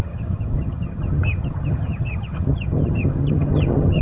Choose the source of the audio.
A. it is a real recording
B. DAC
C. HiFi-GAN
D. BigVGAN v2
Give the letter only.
C